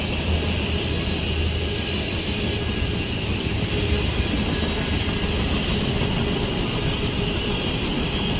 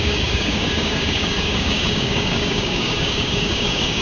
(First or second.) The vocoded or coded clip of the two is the second